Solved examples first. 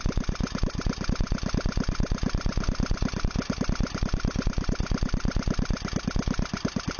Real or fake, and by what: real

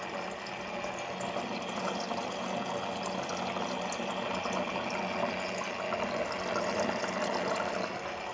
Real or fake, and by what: real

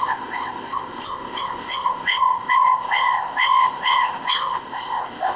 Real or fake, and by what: fake, codec, ZipCodec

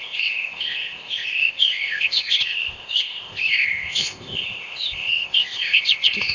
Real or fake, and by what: fake, codec, ZipCodec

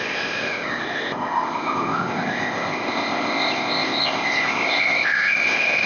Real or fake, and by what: fake, codec, ZipCodec